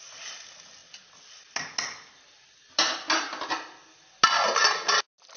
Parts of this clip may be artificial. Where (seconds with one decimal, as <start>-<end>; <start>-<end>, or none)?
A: none

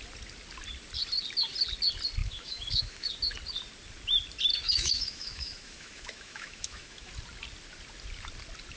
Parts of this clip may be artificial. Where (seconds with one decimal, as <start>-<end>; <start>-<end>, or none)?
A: 2.2-3.1; 4.5-7.1

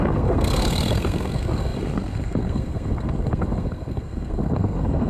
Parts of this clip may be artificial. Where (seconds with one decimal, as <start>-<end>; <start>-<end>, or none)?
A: 0.0-5.1